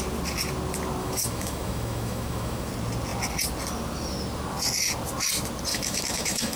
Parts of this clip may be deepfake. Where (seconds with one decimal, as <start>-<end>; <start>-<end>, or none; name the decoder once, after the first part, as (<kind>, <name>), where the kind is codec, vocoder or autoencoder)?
1.0-2.7 (autoencoder, DAC-VAE); 5.7-6.6